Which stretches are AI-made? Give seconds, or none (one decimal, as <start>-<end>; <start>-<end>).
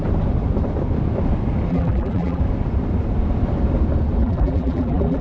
1.7-2.4; 4.2-5.2